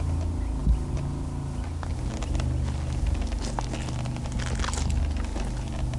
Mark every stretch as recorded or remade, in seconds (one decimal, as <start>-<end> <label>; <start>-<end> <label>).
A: 0.0-6.0 recorded